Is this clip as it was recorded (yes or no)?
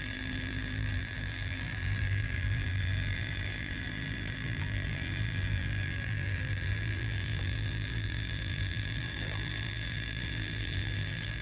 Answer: no